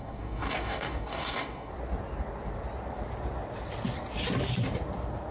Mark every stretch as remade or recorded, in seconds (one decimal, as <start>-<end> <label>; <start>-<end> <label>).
0.0-1.7 remade; 1.7-5.3 recorded